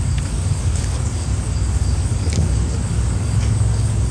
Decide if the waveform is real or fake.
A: fake